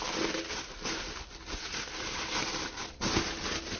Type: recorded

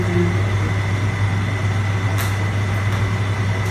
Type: recorded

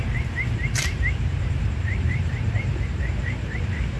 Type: remade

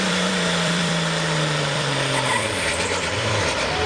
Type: remade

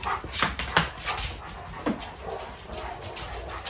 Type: recorded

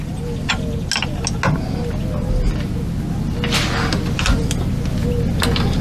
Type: recorded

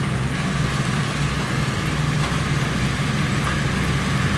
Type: recorded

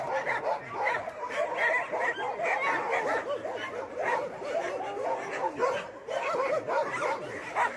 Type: recorded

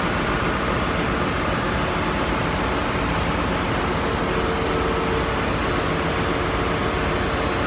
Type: recorded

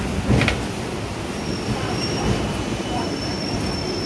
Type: remade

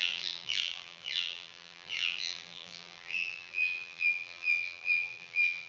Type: remade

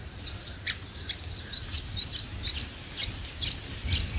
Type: recorded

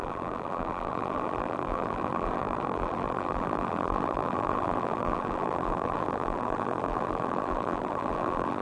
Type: remade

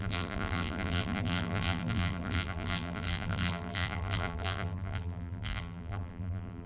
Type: remade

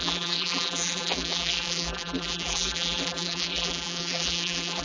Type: remade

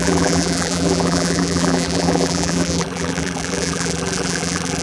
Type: remade